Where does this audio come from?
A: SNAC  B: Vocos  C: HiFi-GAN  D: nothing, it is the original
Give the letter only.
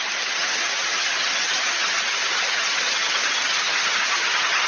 C